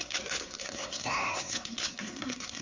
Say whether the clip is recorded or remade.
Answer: remade